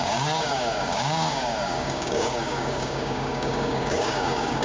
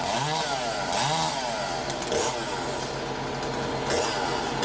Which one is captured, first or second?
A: second